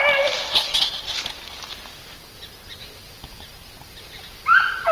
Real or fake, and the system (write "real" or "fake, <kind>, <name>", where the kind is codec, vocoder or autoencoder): real